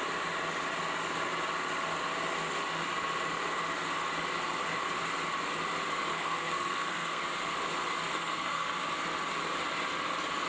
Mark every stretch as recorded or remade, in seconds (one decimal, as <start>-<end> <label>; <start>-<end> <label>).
0.0-6.1 recorded; 6.1-7.2 remade; 7.2-8.1 recorded; 8.1-8.7 remade; 8.7-10.5 recorded